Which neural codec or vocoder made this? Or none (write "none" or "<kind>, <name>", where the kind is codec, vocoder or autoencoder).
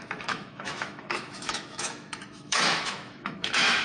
autoencoder, DAC-VAE